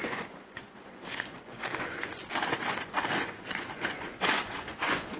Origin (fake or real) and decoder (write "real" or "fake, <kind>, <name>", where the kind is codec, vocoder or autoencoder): fake, vocoder, Vocos